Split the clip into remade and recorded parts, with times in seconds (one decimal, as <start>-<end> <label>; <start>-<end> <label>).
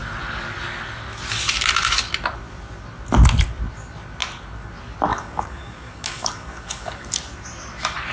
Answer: 0.0-5.1 recorded; 5.1-7.1 remade; 7.1-8.1 recorded